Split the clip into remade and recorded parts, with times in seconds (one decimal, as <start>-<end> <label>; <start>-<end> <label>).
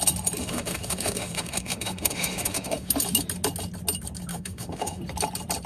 0.0-0.4 recorded; 0.4-2.9 remade; 2.9-4.3 recorded; 4.3-5.0 remade; 5.0-5.7 recorded